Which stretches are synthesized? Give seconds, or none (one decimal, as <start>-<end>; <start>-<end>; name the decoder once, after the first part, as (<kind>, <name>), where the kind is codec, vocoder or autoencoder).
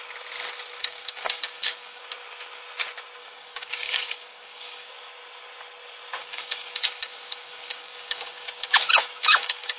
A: 0.8-2.0 (codec, DAC); 3.2-4.9; 6.2-9.8